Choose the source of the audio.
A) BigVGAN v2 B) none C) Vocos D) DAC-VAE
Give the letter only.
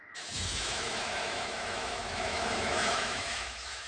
D